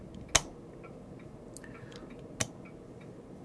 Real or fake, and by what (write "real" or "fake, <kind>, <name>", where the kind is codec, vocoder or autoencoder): real